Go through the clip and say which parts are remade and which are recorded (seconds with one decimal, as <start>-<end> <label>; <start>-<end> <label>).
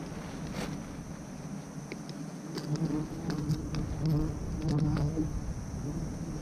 0.0-6.4 recorded